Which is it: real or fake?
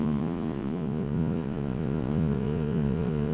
fake